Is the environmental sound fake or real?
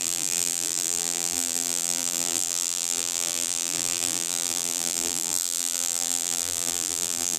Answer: fake